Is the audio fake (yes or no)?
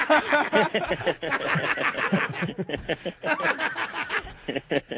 no